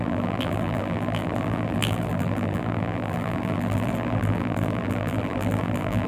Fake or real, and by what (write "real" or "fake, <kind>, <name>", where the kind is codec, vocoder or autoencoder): fake, vocoder, BigVGAN v2